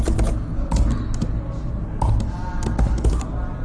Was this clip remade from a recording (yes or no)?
no